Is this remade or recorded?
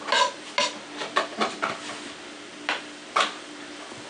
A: recorded